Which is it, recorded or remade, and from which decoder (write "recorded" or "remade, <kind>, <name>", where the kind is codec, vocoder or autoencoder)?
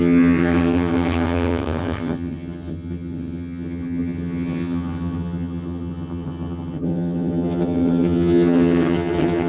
remade, vocoder, HiFi-GAN